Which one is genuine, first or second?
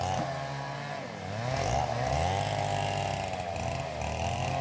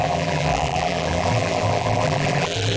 first